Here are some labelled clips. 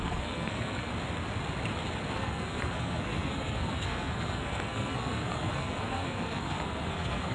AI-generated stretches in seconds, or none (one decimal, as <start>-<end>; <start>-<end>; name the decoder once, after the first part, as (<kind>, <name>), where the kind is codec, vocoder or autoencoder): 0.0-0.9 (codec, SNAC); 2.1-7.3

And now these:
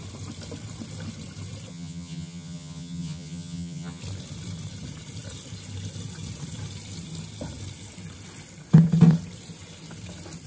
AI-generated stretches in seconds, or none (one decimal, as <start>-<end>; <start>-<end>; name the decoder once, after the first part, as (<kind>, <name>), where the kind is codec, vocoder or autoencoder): 1.7-4.0 (vocoder, HiFi-GAN)

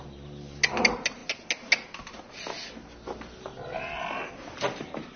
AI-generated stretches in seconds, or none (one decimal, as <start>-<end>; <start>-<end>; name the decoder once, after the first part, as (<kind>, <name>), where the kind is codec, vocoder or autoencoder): none